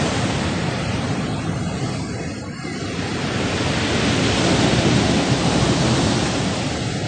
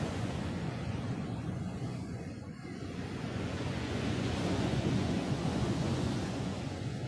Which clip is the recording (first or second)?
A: first